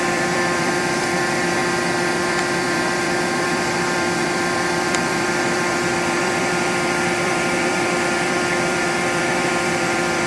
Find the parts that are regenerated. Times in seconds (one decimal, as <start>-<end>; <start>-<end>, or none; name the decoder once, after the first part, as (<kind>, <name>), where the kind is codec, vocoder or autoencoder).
0.0-1.6 (vocoder, BigVGAN v2); 2.3-10.3